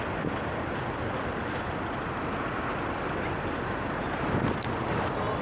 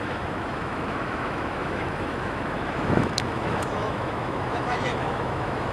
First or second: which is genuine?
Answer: first